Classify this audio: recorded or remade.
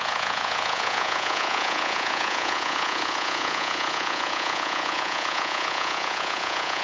remade